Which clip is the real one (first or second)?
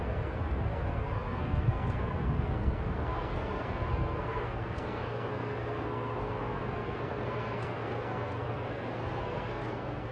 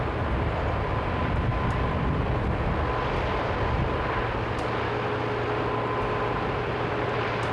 second